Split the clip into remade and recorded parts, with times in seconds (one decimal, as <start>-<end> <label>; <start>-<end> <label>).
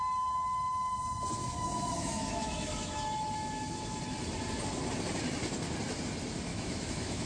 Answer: 0.0-1.4 recorded; 1.4-4.0 remade; 4.0-6.5 recorded; 6.5-7.3 remade